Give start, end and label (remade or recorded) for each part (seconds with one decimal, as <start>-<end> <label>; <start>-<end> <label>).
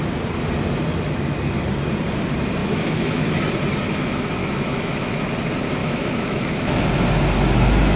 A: 0.0-2.6 recorded; 2.6-3.3 remade; 3.3-4.4 recorded; 4.4-5.2 remade; 5.2-5.8 recorded; 5.8-6.8 remade; 6.8-8.0 recorded